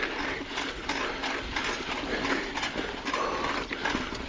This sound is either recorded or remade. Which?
recorded